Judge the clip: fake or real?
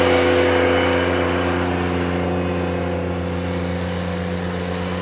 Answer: real